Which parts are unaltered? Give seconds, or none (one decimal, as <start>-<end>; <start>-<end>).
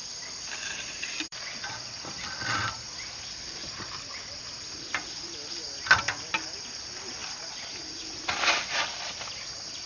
7.2-8.2